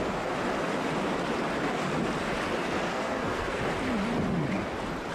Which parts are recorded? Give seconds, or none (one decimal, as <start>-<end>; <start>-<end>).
0.0-2.9; 3.6-5.1